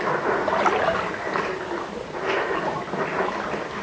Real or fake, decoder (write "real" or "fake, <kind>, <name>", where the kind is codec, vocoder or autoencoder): real